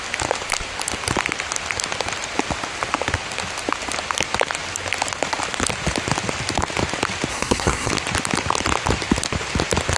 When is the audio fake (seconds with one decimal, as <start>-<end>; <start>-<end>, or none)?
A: 7.3-7.9